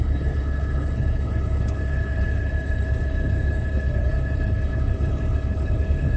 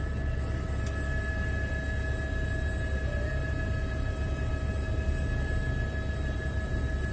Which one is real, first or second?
second